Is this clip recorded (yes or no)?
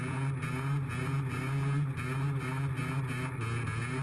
yes